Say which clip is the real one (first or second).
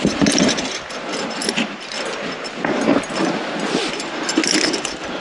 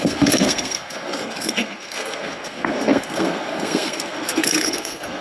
first